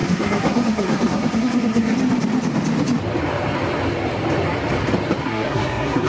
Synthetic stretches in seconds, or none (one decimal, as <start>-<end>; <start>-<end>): 0.0-1.9; 5.2-6.1